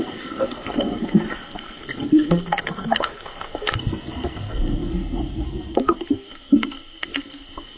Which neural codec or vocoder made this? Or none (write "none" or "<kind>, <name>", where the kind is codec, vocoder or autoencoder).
codec, SNAC